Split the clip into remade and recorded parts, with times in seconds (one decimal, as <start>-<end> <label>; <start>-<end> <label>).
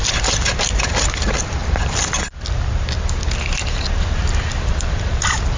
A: 0.0-1.6 recorded; 1.6-2.2 remade; 2.2-5.6 recorded